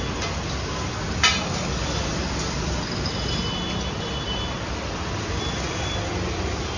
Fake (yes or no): no